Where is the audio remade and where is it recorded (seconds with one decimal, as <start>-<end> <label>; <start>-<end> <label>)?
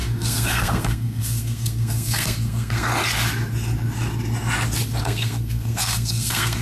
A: 0.0-2.9 remade; 2.9-5.0 recorded; 5.0-6.6 remade